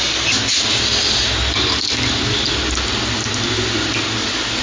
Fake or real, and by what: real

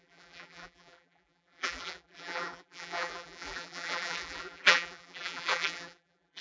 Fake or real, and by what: fake, vocoder, BigVGAN v2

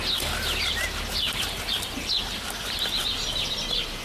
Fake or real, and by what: real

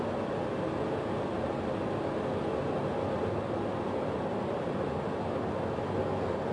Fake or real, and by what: real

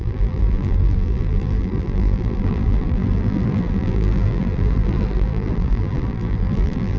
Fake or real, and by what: fake, vocoder, BigVGAN v2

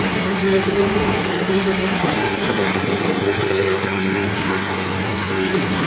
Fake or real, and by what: fake, codec, SNAC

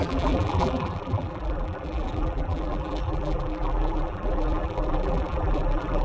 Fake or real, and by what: fake, vocoder, BigVGAN v2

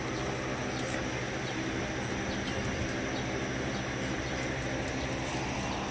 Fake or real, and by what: real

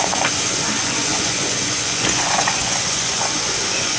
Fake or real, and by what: fake, vocoder, Vocos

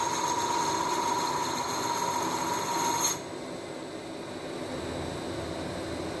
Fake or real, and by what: real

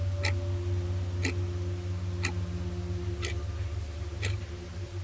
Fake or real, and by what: real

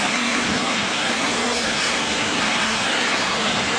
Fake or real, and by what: fake, codec, SNAC